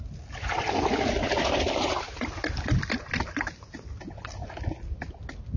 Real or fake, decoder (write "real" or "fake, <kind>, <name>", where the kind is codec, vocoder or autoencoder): real